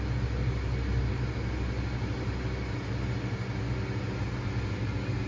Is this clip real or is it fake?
real